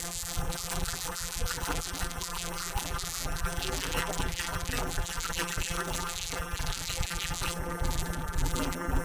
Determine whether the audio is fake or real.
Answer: fake